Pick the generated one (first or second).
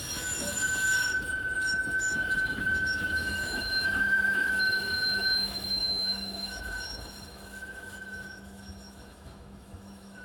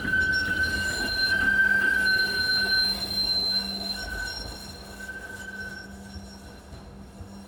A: first